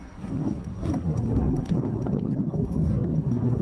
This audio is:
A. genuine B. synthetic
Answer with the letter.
B